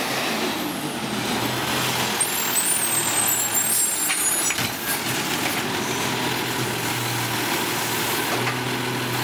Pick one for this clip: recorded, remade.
recorded